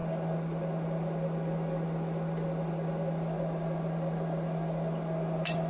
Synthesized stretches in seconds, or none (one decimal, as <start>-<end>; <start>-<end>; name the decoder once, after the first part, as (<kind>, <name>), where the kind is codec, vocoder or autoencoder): none